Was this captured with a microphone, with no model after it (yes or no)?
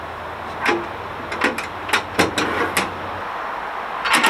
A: yes